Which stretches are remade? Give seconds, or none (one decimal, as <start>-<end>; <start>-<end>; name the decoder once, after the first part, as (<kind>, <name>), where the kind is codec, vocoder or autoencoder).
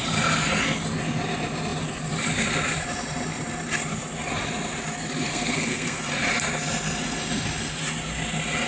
5.3-6.0 (codec, SNAC)